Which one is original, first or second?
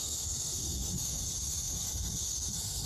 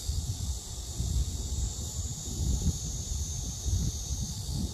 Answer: second